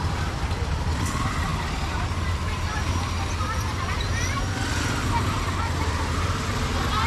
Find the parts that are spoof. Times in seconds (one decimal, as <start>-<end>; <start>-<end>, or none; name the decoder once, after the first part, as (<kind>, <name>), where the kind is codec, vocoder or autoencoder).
none